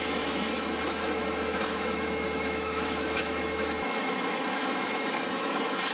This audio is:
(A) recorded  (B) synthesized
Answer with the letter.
B